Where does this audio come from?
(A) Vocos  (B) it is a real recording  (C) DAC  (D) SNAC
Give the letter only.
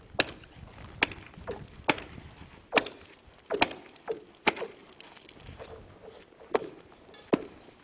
B